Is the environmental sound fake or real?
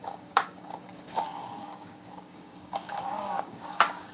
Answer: fake